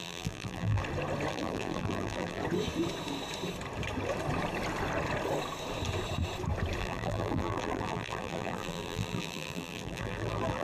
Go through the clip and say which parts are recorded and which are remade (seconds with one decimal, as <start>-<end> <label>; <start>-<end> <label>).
0.0-0.8 remade; 0.8-1.3 recorded; 1.3-2.4 remade; 2.4-6.8 recorded; 6.8-10.6 remade